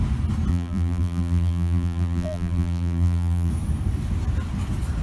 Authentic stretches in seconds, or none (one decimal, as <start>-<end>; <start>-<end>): 0.0-0.5; 3.5-5.0